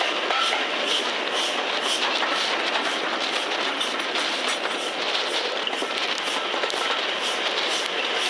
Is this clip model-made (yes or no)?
no